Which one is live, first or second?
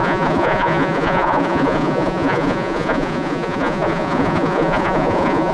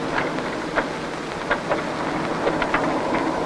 second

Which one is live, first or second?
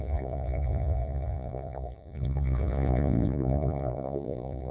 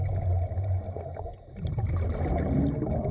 second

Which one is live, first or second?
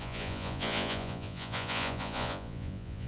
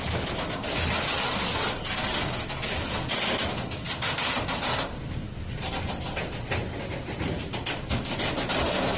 second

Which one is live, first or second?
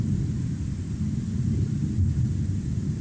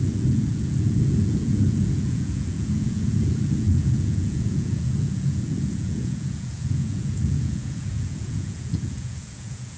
first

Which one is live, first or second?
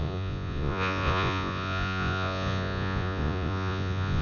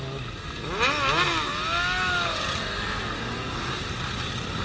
second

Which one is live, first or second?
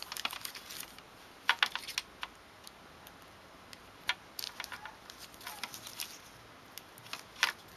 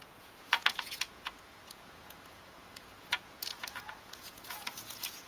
first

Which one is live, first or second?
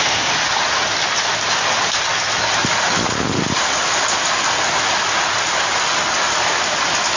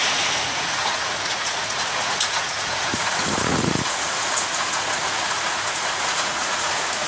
first